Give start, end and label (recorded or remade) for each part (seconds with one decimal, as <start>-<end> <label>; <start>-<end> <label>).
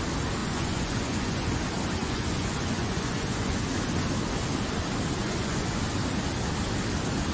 0.0-0.4 recorded; 0.4-1.6 remade; 1.6-2.0 recorded; 2.0-3.6 remade; 3.6-5.2 recorded; 5.2-5.8 remade; 5.8-7.3 recorded